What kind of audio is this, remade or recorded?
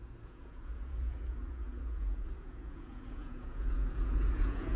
remade